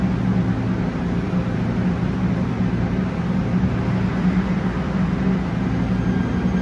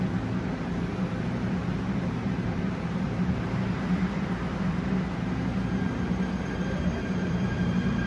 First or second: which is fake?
second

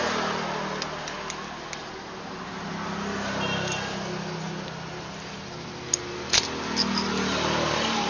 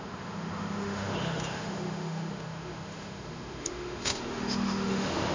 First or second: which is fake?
second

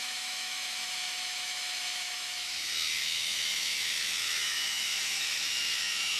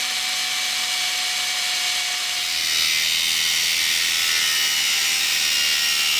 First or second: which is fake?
first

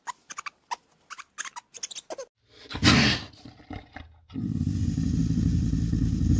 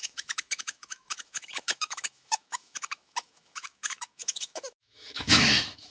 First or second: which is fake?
second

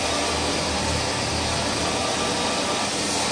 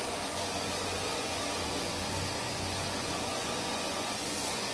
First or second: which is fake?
second